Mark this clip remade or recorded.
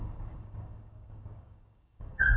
remade